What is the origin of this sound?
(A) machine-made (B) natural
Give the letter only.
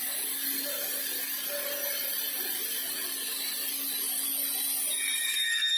B